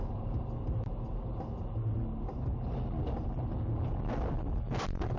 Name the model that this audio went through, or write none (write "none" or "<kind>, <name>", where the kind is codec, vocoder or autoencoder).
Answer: none